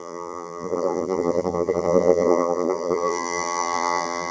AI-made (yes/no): yes